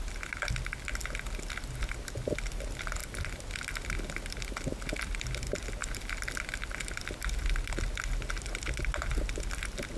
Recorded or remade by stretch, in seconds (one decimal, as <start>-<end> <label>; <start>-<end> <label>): 0.0-10.0 recorded

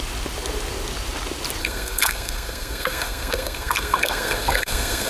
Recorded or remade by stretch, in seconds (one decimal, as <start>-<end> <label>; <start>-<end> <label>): 0.0-1.6 recorded; 1.6-5.1 remade

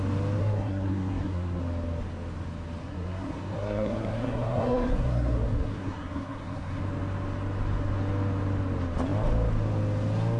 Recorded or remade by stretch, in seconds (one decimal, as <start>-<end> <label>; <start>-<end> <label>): 0.0-0.4 recorded; 0.4-1.6 remade; 1.6-2.8 recorded; 2.8-6.8 remade; 6.8-10.4 recorded

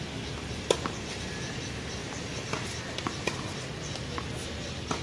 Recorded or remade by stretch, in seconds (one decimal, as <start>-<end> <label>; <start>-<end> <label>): 0.0-5.0 recorded

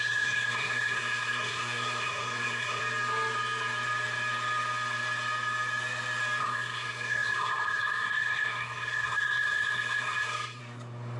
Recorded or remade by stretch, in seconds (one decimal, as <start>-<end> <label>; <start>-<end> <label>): 0.0-2.8 remade; 2.8-6.4 recorded; 6.4-10.6 remade; 10.6-11.2 recorded

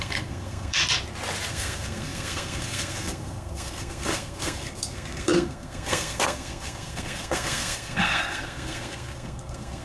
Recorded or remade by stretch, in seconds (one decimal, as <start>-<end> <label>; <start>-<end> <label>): 0.0-0.8 remade; 0.8-1.5 recorded; 1.5-9.8 remade

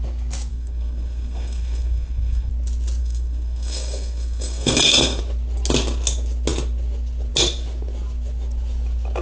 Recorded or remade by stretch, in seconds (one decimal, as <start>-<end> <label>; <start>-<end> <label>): 0.0-0.5 recorded; 0.5-2.5 remade; 2.5-3.0 recorded; 3.0-5.2 remade; 5.2-9.2 recorded